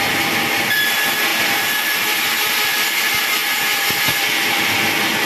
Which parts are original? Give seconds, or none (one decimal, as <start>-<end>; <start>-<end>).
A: 0.0-1.3; 2.0-5.3